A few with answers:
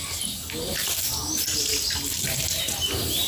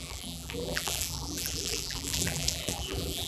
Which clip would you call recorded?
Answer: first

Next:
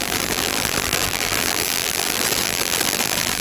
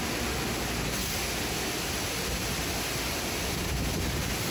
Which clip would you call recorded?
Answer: second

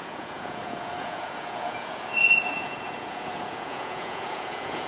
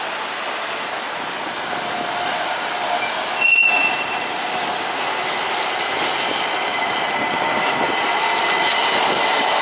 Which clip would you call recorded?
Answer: second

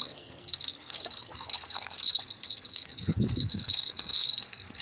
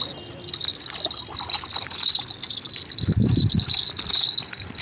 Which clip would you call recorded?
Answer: second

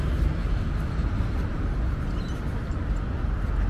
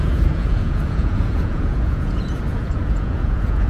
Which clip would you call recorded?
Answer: first